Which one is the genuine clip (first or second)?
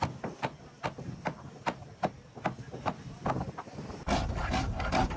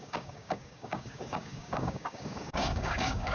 first